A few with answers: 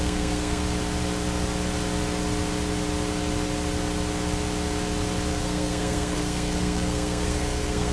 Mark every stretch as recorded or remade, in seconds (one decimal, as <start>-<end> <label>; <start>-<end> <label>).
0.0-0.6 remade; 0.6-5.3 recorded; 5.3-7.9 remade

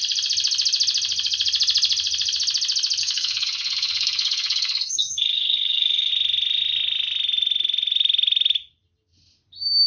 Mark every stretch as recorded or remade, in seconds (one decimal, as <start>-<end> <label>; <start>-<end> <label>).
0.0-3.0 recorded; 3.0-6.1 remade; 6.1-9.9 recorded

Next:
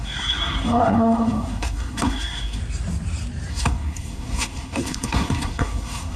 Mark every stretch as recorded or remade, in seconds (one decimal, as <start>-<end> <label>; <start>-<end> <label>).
0.0-2.6 remade; 2.6-3.5 recorded; 3.5-6.2 remade

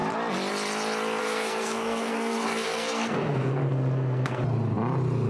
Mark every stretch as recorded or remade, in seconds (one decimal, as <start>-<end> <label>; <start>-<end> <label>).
0.0-1.2 recorded; 1.2-4.4 remade; 4.4-5.3 recorded

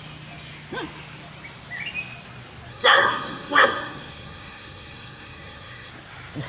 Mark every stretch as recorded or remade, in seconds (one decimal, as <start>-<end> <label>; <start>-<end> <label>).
0.0-2.7 recorded; 2.7-5.9 remade; 5.9-6.5 recorded

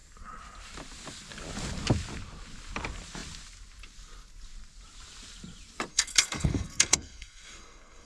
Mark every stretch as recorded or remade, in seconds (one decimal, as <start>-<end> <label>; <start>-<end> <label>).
0.0-5.9 recorded; 5.9-8.1 remade